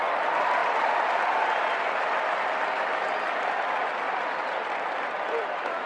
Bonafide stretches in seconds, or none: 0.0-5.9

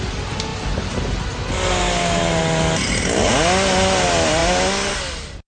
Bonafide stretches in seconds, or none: 0.0-5.5

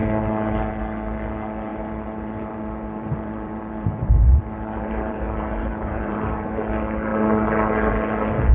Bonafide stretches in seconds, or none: 0.0-1.7; 6.6-8.5

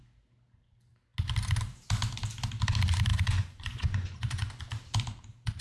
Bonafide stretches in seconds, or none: 0.0-3.1; 4.5-5.6

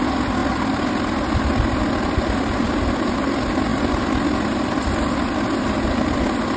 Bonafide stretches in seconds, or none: 0.0-6.6

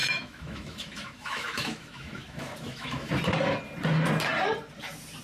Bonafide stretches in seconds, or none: 3.1-5.2